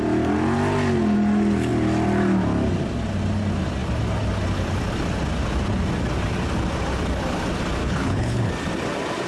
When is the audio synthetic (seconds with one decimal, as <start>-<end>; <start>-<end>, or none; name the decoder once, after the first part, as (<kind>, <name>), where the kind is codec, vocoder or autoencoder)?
7.8-8.5 (codec, HILCodec)